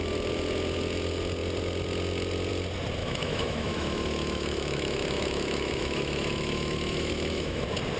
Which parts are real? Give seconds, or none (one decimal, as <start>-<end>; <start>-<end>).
0.0-3.0; 7.6-8.0